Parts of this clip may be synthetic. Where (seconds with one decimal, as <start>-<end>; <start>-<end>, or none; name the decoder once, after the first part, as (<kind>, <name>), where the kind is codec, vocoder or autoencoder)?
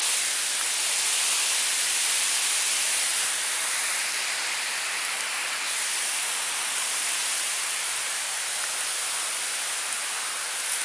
3.1-3.8 (vocoder, BigVGAN v2); 7.2-8.5